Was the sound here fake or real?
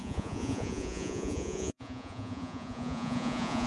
fake